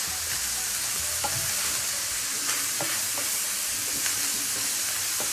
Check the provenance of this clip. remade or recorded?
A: recorded